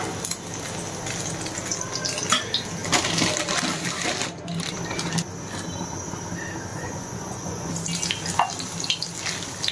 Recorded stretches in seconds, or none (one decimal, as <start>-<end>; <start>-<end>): 0.0-6.7; 7.7-9.7